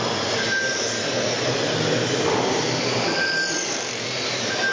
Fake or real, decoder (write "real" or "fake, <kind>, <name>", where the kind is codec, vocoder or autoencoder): real